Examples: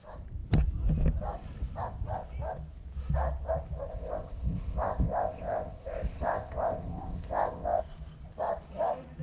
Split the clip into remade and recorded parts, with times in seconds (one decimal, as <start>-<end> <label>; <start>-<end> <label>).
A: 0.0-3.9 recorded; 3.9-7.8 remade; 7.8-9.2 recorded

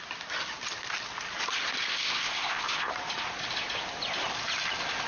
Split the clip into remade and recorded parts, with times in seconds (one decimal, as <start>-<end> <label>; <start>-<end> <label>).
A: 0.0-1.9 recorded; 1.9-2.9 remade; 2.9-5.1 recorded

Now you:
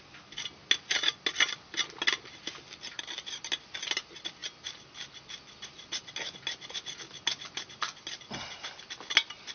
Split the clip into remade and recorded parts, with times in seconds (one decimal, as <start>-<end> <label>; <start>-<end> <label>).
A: 0.0-9.5 recorded

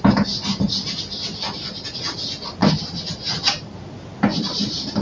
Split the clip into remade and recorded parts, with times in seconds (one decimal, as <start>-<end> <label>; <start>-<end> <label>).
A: 0.0-5.0 recorded

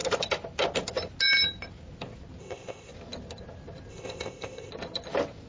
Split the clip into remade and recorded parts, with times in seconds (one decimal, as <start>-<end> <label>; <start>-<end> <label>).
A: 0.0-2.4 recorded; 2.4-2.9 remade; 2.9-3.9 recorded; 3.9-4.7 remade; 4.7-5.5 recorded